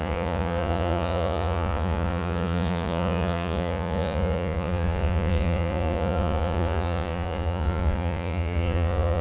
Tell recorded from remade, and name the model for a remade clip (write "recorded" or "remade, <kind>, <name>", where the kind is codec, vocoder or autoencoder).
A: remade, vocoder, Vocos